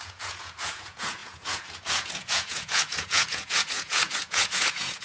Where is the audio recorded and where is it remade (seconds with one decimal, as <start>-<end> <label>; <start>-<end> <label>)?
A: 0.0-5.0 remade